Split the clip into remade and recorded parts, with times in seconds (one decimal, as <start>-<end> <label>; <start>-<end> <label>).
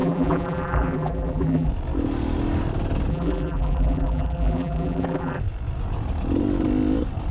0.0-1.7 remade; 1.7-3.1 recorded; 3.1-5.4 remade; 5.4-7.3 recorded